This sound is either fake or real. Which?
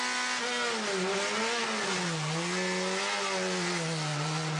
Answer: real